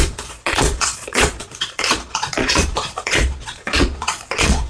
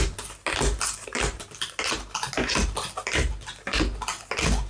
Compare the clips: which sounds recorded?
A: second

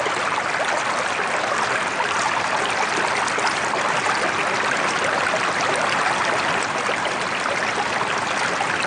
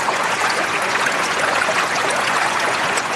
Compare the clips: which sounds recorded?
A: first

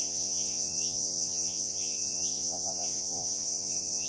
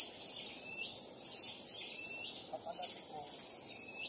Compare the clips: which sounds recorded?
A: second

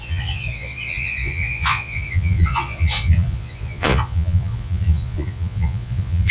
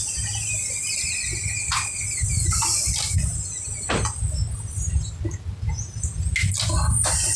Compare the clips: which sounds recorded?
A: second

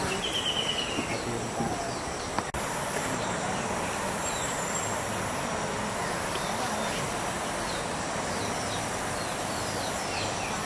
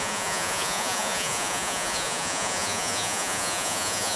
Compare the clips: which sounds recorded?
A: first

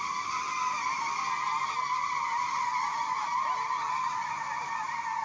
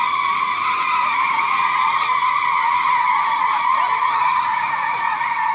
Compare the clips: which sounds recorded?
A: first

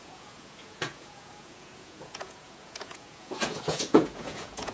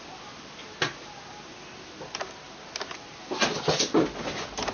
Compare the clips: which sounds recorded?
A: second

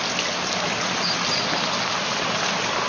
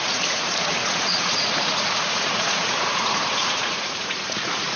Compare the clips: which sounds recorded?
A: first